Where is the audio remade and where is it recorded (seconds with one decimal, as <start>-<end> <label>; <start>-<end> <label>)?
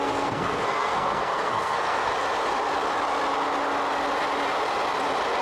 0.0-2.1 remade; 2.1-5.4 recorded